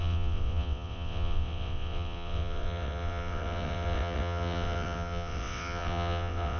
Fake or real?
fake